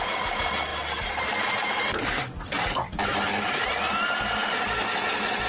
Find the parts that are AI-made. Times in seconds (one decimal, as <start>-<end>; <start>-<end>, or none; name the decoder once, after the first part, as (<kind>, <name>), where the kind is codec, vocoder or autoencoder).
none